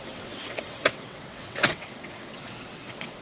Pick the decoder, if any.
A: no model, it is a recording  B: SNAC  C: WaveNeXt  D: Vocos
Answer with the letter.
C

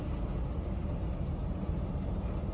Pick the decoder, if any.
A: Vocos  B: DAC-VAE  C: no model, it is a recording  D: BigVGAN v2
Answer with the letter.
C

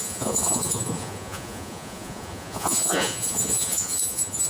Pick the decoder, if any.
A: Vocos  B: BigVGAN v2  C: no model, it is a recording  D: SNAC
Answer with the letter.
A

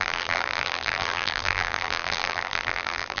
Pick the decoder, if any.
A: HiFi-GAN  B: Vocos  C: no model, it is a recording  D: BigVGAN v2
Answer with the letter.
D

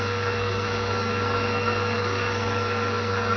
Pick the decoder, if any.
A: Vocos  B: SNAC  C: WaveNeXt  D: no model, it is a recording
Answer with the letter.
B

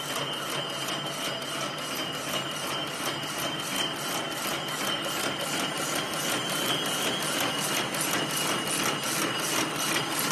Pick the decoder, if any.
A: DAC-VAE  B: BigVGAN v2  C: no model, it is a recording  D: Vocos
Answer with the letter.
C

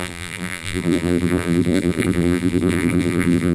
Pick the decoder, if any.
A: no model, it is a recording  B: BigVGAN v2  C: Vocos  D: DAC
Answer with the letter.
B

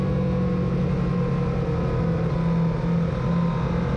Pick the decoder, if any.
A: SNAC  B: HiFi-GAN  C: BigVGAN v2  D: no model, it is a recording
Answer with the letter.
D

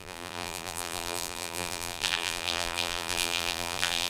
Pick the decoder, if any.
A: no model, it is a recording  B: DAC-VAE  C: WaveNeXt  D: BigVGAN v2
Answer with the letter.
D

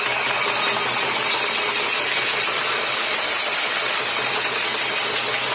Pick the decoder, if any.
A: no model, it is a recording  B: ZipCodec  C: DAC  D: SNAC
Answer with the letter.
A